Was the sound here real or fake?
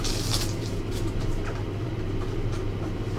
real